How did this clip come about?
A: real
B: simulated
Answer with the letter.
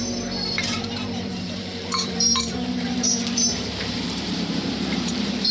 B